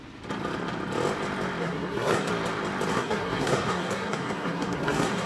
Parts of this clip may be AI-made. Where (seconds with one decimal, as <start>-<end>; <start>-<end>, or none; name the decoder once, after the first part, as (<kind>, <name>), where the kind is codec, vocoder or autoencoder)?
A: 1.6-2.3 (codec, SNAC); 2.9-5.3